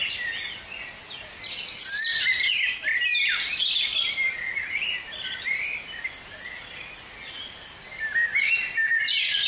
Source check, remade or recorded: recorded